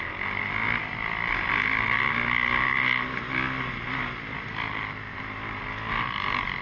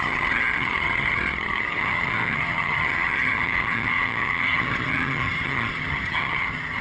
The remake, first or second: second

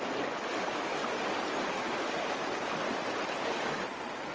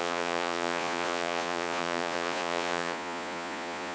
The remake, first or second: second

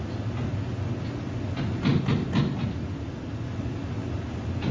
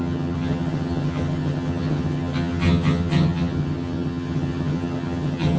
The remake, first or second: second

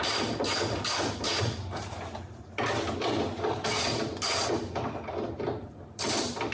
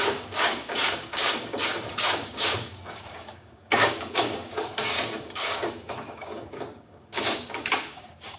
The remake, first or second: second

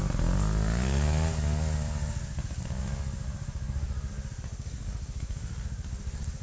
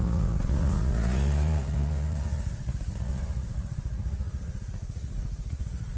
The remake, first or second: second